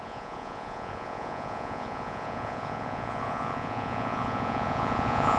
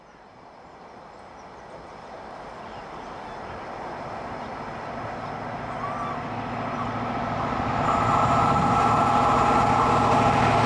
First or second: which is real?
second